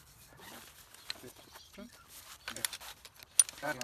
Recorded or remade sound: recorded